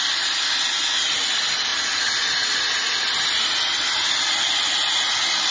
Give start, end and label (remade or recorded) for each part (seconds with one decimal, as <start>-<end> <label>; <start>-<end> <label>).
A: 0.0-5.5 recorded